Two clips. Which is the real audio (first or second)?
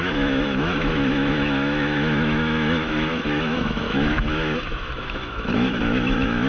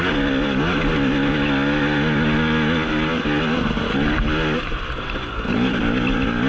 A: second